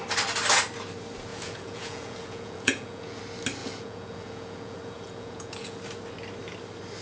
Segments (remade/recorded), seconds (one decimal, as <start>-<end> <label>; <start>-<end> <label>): 0.0-1.3 recorded; 1.3-3.2 remade; 3.2-3.6 recorded; 3.6-5.8 remade; 5.8-7.0 recorded